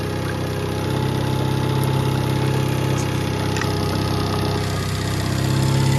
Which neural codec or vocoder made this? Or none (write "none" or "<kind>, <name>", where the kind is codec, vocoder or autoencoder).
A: none